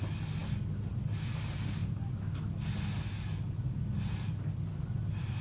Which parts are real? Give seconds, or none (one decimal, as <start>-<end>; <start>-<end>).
0.0-5.4